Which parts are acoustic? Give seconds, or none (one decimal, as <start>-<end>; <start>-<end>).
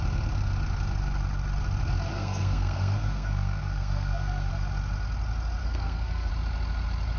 0.0-2.1; 4.5-5.6; 6.3-7.2